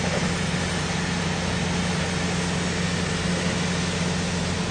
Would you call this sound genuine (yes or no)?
yes